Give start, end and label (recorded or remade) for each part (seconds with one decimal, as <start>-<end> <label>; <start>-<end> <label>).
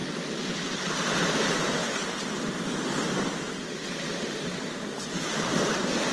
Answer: 0.0-1.0 recorded; 1.0-1.8 remade; 1.8-4.3 recorded; 4.3-6.1 remade